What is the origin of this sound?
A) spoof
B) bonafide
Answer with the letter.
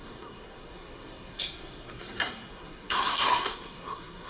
A